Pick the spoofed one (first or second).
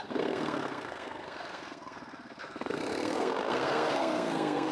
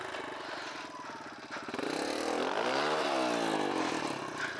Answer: first